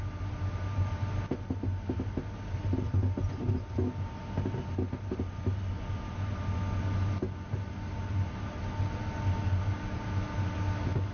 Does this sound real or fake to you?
real